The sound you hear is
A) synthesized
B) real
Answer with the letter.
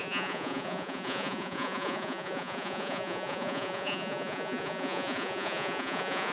A